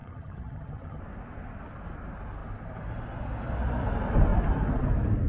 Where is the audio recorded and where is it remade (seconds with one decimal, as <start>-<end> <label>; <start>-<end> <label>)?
0.0-1.0 remade; 1.0-5.3 recorded